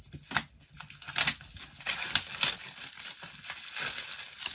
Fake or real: real